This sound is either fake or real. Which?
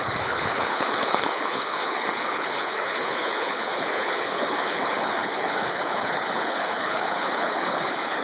fake